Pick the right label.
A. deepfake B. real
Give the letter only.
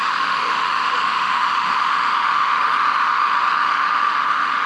A